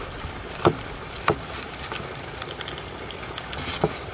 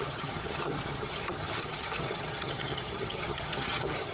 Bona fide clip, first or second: first